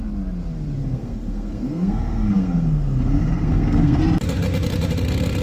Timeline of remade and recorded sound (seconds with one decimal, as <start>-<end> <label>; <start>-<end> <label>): 0.0-0.8 recorded; 0.8-4.0 remade; 4.0-5.4 recorded